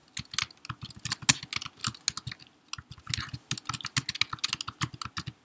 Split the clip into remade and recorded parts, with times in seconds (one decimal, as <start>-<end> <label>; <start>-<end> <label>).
0.0-5.4 recorded